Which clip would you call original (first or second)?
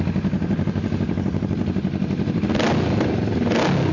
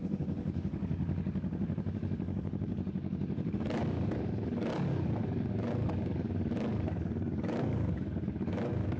first